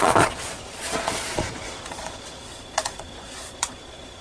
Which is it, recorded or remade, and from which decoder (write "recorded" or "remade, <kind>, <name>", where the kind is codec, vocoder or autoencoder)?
remade, vocoder, Vocos